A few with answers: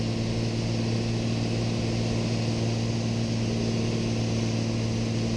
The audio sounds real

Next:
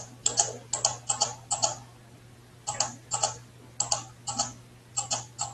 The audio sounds real